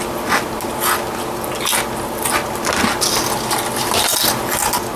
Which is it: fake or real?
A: real